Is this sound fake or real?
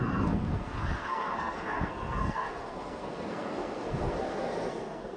fake